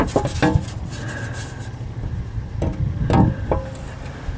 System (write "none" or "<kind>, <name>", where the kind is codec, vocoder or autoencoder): none